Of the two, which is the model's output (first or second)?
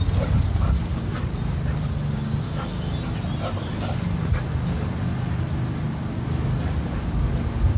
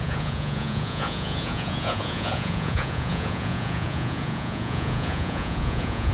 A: second